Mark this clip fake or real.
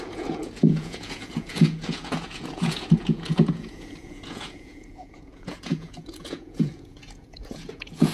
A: fake